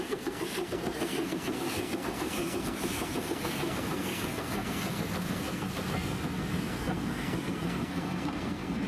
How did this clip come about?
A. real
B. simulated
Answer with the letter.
B